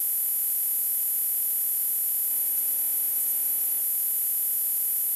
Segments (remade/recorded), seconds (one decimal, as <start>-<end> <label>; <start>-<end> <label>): 0.0-2.3 recorded; 2.3-3.8 remade; 3.8-5.2 recorded